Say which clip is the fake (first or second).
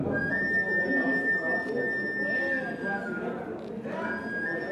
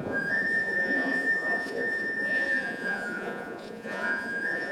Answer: second